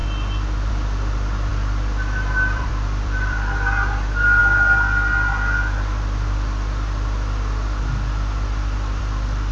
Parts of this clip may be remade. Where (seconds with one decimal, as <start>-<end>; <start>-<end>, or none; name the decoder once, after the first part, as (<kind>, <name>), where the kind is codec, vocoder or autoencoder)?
0.7-4.4 (vocoder, BigVGAN v2); 9.0-9.5